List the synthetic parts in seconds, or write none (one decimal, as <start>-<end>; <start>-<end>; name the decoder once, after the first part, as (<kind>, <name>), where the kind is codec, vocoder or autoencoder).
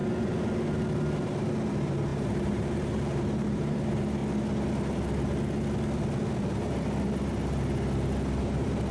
1.7-4.2 (vocoder, BigVGAN v2); 8.4-8.9